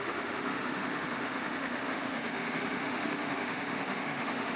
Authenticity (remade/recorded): remade